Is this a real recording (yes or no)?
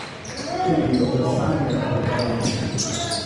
yes